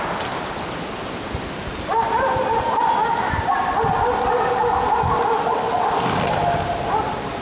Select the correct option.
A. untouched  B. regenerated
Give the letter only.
A